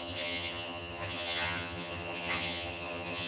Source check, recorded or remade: remade